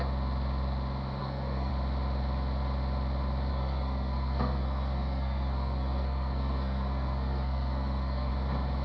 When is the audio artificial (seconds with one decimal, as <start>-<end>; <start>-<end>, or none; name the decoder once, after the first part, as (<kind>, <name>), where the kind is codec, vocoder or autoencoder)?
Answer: 1.2-1.7 (codec, SNAC); 3.5-8.3